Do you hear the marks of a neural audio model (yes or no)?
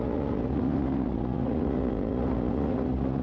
yes